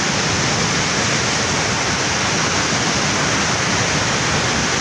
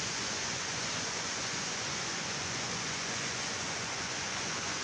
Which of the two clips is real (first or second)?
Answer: first